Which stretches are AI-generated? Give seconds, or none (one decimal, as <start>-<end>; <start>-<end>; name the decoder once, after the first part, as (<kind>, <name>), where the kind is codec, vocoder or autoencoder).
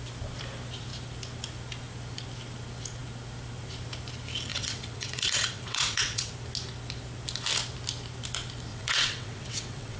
4.5-6.3 (vocoder, WaveNeXt); 8.7-10.0